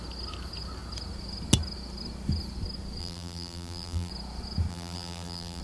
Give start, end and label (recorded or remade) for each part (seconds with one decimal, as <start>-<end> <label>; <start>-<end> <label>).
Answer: 0.0-3.0 recorded; 3.0-4.1 remade; 4.1-4.7 recorded; 4.7-5.6 remade